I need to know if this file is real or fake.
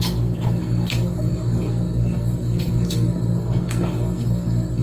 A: fake